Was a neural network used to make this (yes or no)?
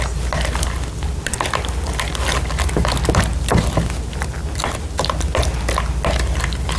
no